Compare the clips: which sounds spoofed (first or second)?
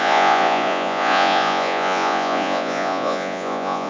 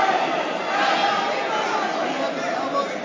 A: first